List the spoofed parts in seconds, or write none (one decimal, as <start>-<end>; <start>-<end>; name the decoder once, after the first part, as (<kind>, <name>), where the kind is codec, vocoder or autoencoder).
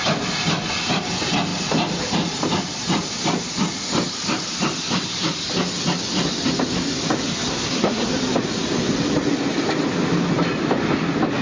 7.5-8.1 (codec, SNAC)